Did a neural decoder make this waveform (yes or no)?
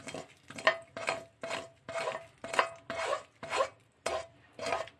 no